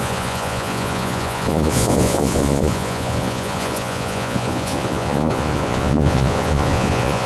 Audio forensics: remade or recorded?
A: remade